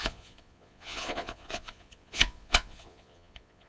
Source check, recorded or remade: remade